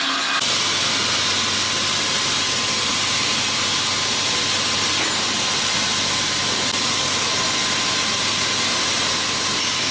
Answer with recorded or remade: recorded